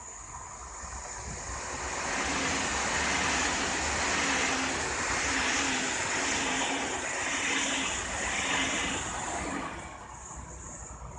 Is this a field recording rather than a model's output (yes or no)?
yes